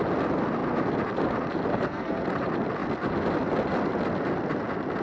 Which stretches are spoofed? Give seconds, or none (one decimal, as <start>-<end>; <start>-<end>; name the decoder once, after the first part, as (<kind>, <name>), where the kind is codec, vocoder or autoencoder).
1.7-2.3 (codec, SNAC)